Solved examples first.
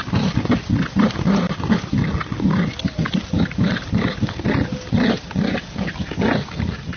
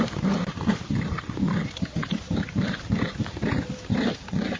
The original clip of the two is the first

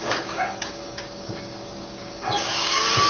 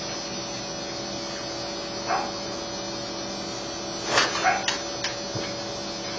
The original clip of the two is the second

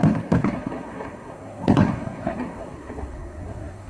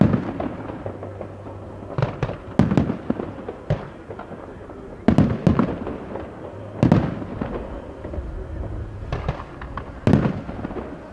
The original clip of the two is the second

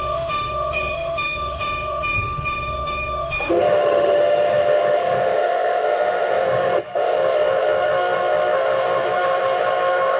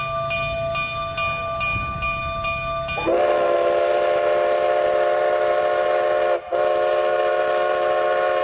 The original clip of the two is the second